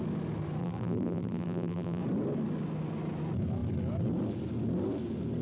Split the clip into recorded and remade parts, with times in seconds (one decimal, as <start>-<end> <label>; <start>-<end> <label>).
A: 0.0-0.6 recorded; 0.6-2.0 remade; 2.0-5.4 recorded